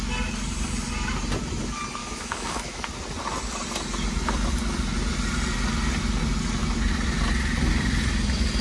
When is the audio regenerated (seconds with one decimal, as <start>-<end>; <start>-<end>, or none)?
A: 2.0-2.9